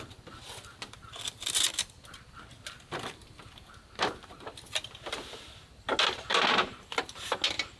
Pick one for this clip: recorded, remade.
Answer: recorded